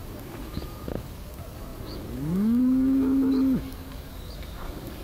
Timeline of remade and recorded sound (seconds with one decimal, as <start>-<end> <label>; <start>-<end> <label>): 0.0-5.0 remade